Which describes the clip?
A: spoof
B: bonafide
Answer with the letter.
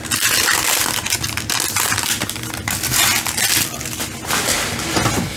B